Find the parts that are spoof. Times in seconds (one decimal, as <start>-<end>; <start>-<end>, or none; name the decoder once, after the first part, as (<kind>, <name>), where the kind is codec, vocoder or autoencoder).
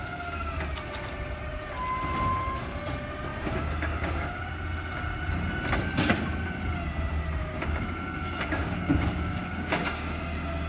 3.3-4.5 (codec, DAC); 7.4-10.2